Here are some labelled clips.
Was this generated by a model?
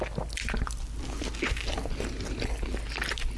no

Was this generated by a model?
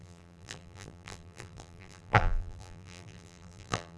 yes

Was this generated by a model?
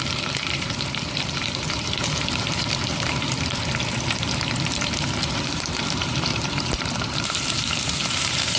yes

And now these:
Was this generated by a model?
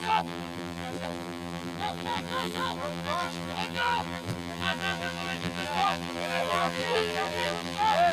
yes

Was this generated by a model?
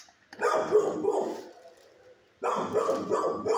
no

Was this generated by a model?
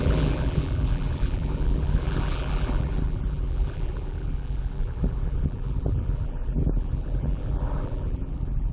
yes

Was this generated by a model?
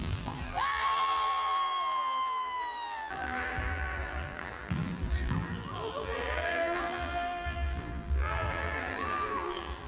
yes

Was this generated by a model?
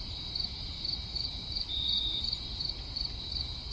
yes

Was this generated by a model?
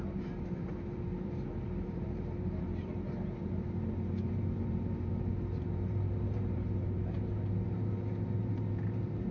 yes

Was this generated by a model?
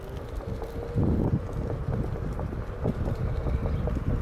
no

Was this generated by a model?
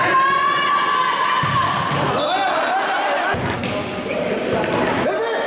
no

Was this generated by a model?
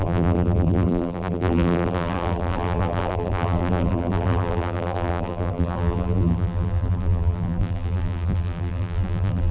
yes